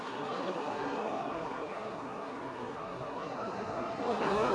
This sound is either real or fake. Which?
fake